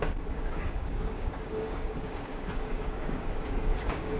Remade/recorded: remade